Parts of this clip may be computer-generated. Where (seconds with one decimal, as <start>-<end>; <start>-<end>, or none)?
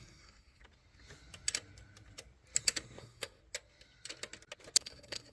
0.0-0.6; 3.0-3.4; 4.8-5.3